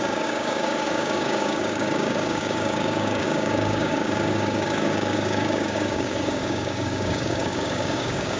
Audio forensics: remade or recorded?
remade